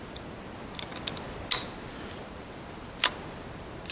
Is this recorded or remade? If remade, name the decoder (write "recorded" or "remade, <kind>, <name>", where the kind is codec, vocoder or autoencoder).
recorded